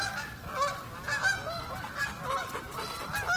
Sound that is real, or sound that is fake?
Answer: real